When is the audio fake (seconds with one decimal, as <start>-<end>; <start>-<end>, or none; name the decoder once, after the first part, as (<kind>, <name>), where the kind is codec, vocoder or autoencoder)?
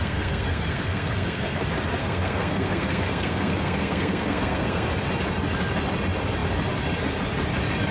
0.0-1.6 (codec, SNAC); 2.0-4.9